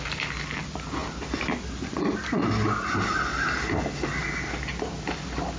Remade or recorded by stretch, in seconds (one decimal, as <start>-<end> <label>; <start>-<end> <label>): 0.0-5.6 recorded

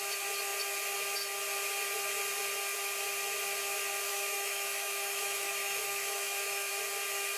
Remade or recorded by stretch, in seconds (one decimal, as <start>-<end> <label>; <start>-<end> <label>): 0.0-4.1 recorded; 4.1-6.7 remade; 6.7-7.4 recorded

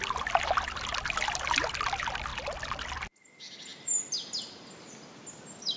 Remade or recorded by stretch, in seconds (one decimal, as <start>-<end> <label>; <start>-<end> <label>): 0.0-5.8 recorded

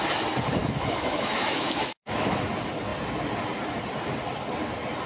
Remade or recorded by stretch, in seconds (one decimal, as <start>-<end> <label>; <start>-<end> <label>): 0.0-0.6 recorded; 0.6-2.5 remade; 2.5-5.1 recorded

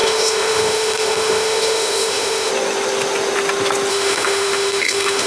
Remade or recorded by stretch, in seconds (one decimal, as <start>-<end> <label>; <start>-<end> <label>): 0.0-2.5 remade; 2.5-3.9 recorded; 3.9-5.3 remade

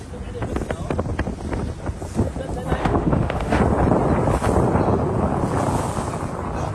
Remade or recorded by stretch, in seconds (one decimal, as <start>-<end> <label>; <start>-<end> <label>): 0.0-2.8 recorded; 2.8-3.6 remade; 3.6-6.7 recorded